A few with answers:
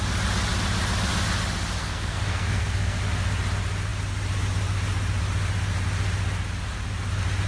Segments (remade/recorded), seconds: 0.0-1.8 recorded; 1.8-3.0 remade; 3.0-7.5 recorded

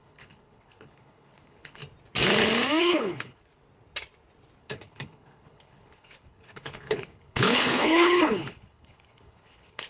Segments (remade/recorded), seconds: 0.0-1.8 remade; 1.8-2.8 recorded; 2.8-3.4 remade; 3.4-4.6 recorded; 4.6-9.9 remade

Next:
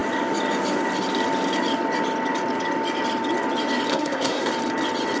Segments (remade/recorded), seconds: 0.0-3.9 recorded; 3.9-4.5 remade; 4.5-5.2 recorded